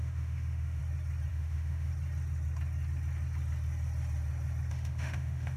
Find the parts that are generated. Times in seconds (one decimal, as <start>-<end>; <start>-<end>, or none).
0.0-0.8; 1.3-1.9; 4.7-5.6